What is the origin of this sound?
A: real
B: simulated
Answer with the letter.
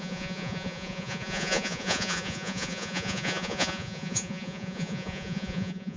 B